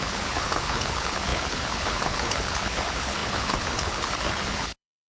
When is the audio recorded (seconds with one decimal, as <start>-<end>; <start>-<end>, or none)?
none